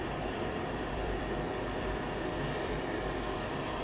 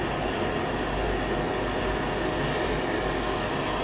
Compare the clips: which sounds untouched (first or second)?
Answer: second